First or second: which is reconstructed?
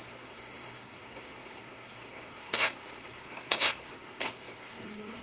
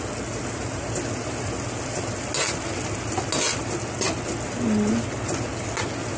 first